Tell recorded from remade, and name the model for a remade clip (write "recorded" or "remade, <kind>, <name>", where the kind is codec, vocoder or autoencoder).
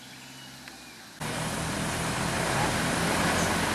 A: recorded